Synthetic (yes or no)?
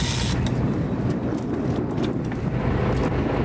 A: no